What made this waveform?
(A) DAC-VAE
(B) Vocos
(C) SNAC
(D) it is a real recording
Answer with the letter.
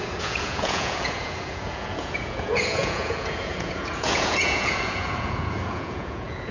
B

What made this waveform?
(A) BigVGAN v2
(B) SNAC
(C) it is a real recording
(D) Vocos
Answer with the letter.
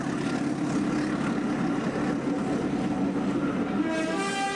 C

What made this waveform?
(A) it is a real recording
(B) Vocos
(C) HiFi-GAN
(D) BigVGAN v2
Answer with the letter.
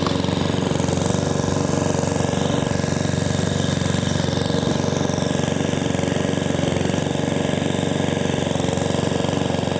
A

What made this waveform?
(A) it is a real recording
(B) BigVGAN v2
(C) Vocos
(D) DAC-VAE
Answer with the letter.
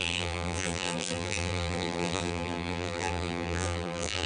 B